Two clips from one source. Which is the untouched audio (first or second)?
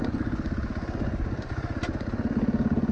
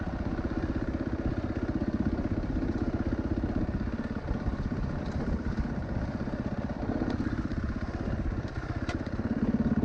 first